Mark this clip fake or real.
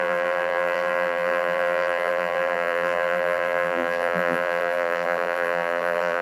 fake